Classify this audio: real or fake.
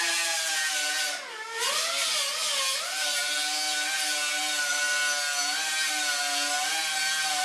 real